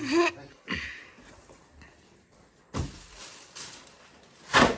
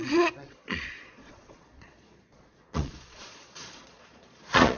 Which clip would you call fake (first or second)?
second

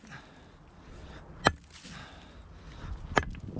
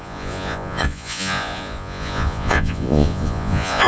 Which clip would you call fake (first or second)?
second